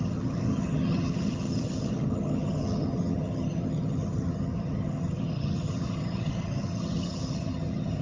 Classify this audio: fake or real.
fake